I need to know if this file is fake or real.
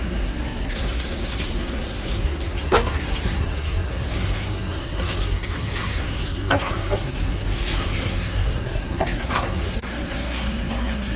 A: fake